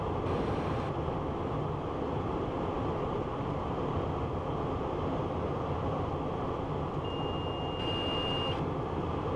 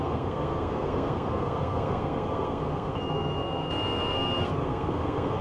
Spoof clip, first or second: second